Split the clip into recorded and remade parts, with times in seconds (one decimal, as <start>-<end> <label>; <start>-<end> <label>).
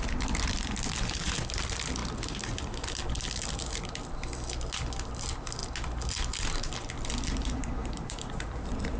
0.0-7.8 recorded; 7.8-9.0 remade